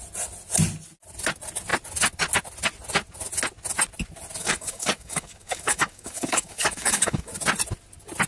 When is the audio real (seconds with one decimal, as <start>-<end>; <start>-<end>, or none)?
0.0-4.4; 7.3-8.3